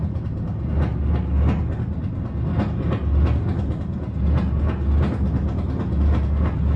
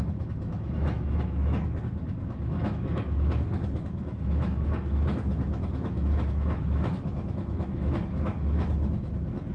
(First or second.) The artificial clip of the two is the second